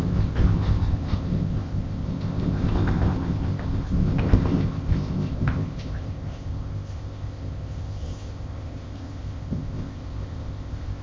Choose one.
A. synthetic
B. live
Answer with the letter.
A